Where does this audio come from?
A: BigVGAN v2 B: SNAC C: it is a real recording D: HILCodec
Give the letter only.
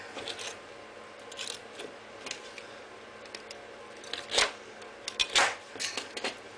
C